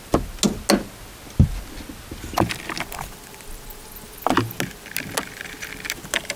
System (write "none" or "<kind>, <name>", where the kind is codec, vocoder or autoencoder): none